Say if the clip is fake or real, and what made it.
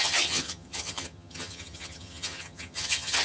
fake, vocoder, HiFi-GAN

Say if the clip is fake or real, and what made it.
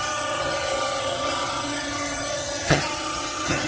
fake, vocoder, HiFi-GAN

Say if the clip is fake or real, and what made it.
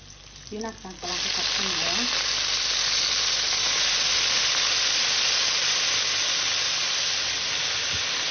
real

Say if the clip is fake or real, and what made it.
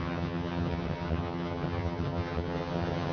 fake, vocoder, HiFi-GAN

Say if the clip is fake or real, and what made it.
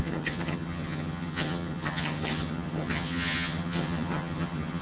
fake, vocoder, HiFi-GAN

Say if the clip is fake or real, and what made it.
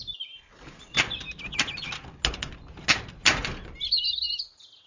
real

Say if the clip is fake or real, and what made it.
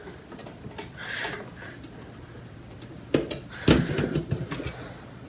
real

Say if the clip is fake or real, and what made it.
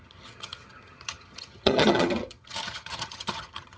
fake, vocoder, HiFi-GAN